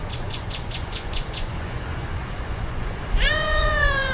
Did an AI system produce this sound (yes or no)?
yes